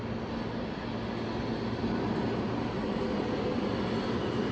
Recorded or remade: recorded